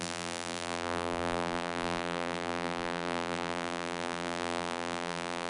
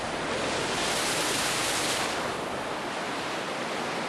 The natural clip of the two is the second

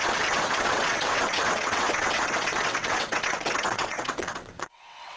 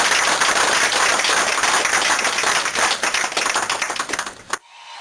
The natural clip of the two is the second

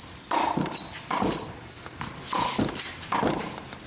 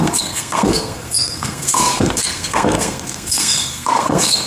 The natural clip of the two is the first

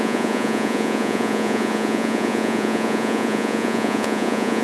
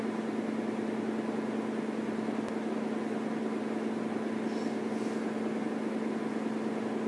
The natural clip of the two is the second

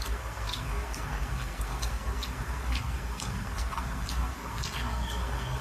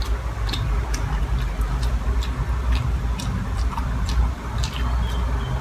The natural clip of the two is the second